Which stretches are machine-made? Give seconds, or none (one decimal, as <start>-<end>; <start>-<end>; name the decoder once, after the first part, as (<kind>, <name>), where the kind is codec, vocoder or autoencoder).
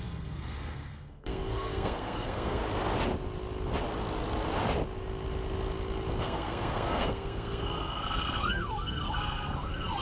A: 0.0-2.6 (codec, SNAC); 6.2-10.0